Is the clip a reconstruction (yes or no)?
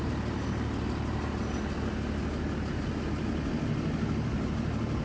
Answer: no